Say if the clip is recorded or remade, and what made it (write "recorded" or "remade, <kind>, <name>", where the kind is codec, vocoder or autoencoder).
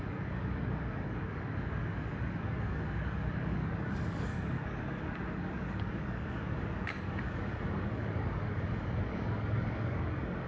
remade, codec, DAC